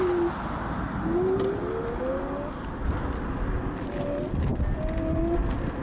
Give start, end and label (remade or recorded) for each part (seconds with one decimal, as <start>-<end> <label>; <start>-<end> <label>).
0.0-5.8 recorded